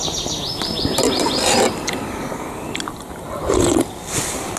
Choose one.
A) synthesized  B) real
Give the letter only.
B